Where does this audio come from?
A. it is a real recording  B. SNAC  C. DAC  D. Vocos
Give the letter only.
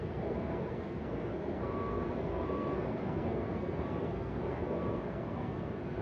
B